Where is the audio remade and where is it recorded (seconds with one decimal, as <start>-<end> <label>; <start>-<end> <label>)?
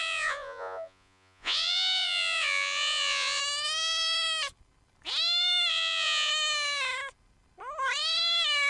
0.0-3.4 remade; 3.4-5.7 recorded; 5.7-6.3 remade; 6.3-8.7 recorded